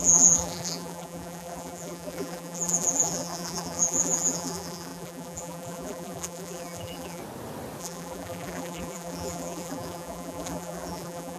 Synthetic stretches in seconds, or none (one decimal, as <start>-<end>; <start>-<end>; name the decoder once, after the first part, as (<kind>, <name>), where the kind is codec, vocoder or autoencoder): 0.0-7.2 (vocoder, BigVGAN v2); 7.8-11.4